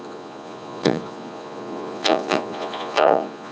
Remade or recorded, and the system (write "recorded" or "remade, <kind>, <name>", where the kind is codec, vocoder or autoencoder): remade, vocoder, Vocos